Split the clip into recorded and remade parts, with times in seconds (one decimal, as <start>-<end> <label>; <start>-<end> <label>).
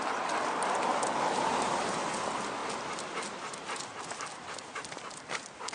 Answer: 0.0-5.7 recorded